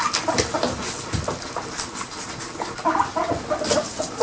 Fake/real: real